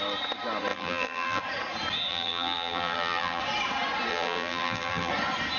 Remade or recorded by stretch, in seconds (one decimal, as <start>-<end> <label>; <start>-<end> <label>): 0.0-0.7 recorded; 0.7-1.4 remade; 1.4-2.1 recorded; 2.1-3.4 remade; 3.4-4.1 recorded; 4.1-5.1 remade; 5.1-5.6 recorded